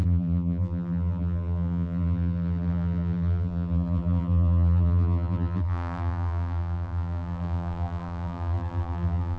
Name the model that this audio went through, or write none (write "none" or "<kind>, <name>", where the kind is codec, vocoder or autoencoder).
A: vocoder, BigVGAN v2